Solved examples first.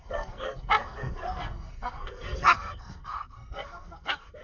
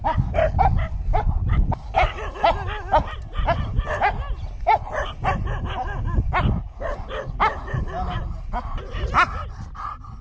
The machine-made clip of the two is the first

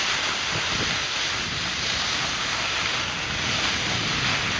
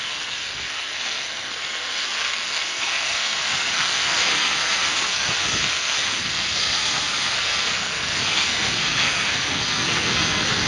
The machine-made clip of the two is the second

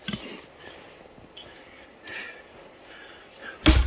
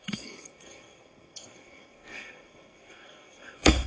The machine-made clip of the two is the second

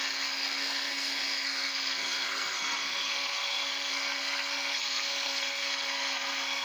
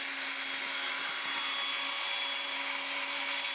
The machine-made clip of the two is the first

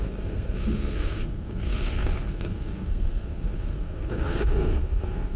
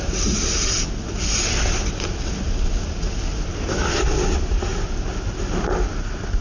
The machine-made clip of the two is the first